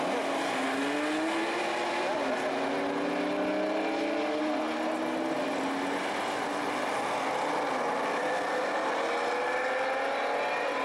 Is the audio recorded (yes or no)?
yes